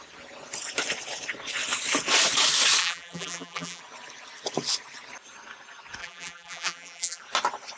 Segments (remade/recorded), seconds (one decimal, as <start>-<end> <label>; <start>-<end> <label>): 0.0-2.8 recorded; 2.8-3.8 remade; 3.8-6.0 recorded; 6.0-7.2 remade; 7.2-7.8 recorded